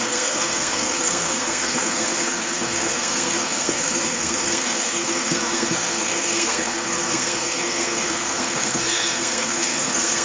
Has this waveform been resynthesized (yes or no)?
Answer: yes